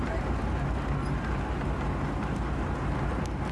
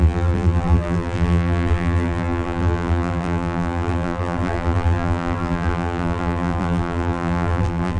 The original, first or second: first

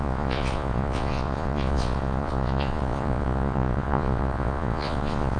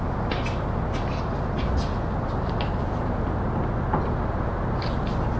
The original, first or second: second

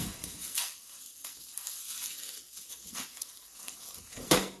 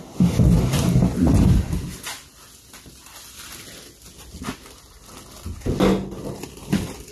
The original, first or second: second